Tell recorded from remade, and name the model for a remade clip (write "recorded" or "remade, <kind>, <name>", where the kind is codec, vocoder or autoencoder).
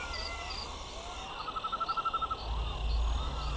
recorded